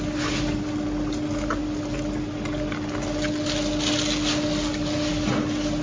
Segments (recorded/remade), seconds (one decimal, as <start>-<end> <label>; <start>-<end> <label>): 0.0-5.8 recorded